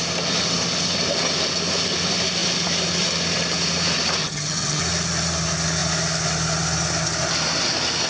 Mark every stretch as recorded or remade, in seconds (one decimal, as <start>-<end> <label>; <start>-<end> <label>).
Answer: 0.0-4.2 recorded; 4.2-4.8 remade; 4.8-8.1 recorded